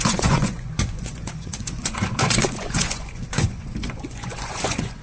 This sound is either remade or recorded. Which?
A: remade